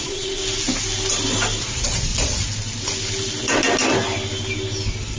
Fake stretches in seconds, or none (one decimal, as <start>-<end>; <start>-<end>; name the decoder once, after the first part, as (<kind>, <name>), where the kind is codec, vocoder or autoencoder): 0.0-0.4 (vocoder, Vocos); 1.6-2.1